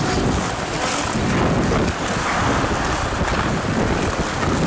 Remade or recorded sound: recorded